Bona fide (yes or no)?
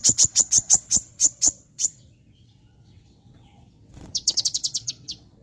no